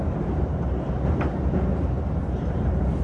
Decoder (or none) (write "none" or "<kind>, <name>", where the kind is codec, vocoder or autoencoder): none